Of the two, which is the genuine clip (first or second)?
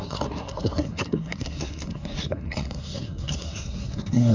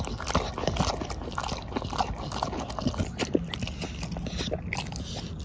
second